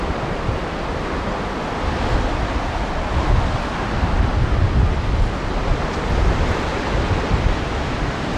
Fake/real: real